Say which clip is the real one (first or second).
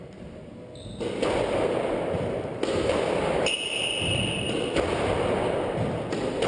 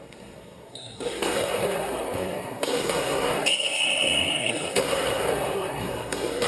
first